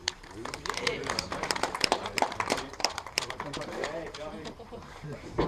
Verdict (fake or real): fake